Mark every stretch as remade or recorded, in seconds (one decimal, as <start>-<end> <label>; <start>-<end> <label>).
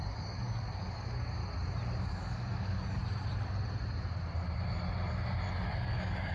0.0-1.4 remade; 1.4-2.0 recorded; 2.0-3.0 remade; 3.0-5.7 recorded; 5.7-6.3 remade